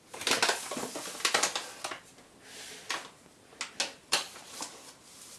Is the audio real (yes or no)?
yes